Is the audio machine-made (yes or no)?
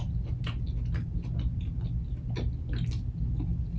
no